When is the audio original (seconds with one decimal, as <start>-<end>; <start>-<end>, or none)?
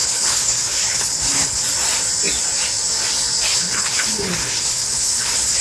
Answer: 1.6-3.5